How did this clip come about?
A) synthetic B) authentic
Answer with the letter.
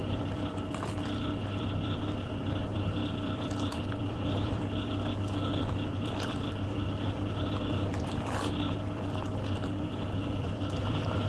A